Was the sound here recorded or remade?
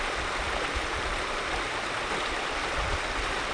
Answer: recorded